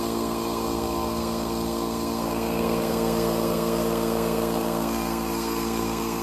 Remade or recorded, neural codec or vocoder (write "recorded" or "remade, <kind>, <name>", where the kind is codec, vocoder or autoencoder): remade, codec, SNAC